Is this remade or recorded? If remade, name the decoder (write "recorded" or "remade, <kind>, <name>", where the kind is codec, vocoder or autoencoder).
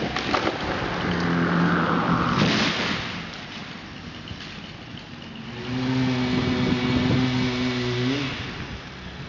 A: recorded